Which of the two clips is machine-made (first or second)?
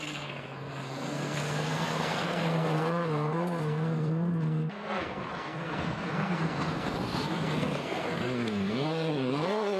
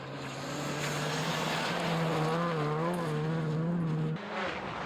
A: first